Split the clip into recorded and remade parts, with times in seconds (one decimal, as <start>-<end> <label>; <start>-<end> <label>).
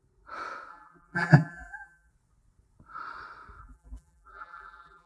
0.0-0.7 recorded; 0.7-2.1 remade; 2.1-3.6 recorded; 3.6-5.1 remade